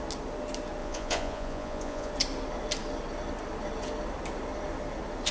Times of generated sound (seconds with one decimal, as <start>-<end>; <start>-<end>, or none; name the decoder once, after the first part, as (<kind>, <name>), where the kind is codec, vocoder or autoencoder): 0.8-2.1 (vocoder, Vocos)